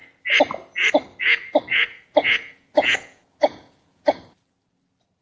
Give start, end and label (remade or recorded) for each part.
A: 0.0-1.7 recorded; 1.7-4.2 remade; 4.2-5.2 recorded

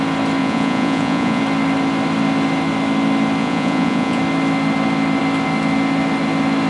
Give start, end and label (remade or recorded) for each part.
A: 0.0-0.4 recorded; 0.4-1.4 remade; 1.4-3.4 recorded; 3.4-4.2 remade; 4.2-6.7 recorded

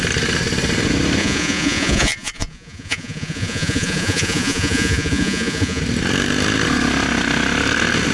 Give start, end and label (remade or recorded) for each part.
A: 0.0-1.2 recorded; 1.2-5.8 remade; 5.8-8.1 recorded

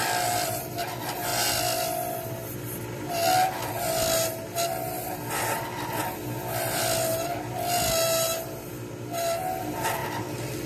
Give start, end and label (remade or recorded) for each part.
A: 0.0-10.7 recorded

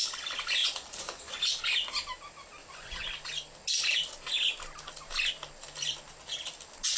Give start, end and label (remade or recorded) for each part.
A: 0.0-0.6 recorded; 0.6-1.5 remade; 1.5-2.6 recorded; 2.6-3.1 remade; 3.1-7.0 recorded

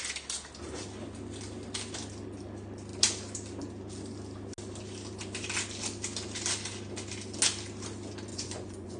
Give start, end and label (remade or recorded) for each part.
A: 0.0-8.3 recorded; 8.3-9.0 remade

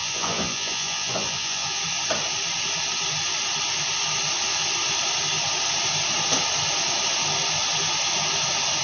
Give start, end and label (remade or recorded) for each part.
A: 0.0-1.8 remade; 1.8-8.8 recorded